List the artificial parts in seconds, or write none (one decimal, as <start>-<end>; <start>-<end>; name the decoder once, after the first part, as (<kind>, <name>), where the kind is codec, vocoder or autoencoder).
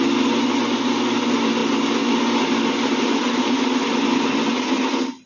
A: none